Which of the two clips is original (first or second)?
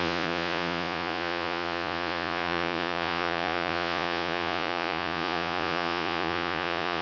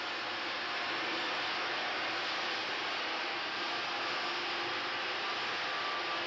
second